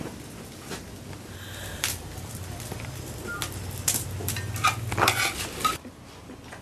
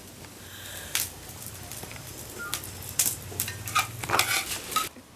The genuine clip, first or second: first